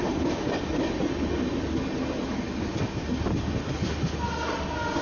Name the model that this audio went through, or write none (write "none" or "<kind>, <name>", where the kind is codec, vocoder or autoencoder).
none